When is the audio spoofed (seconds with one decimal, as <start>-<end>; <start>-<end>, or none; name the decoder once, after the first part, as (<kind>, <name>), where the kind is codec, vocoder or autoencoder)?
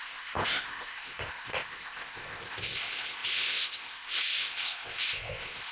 0.0-5.7 (codec, ZipCodec)